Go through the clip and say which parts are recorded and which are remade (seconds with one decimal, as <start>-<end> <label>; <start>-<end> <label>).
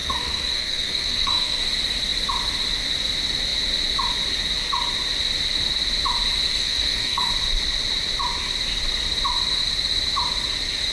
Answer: 0.0-1.6 remade; 1.6-6.5 recorded; 6.5-7.3 remade; 7.3-10.9 recorded